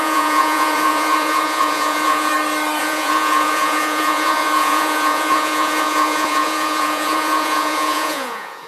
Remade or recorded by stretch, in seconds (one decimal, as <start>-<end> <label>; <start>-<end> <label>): 0.0-2.3 remade; 2.3-2.8 recorded; 2.8-8.7 remade